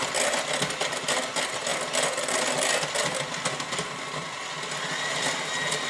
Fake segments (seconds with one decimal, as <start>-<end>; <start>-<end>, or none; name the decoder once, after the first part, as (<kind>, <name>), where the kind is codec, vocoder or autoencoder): none